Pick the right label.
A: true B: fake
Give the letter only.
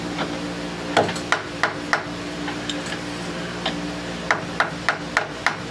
A